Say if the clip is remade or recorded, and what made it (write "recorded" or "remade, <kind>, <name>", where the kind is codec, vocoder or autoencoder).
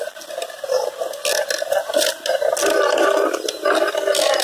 recorded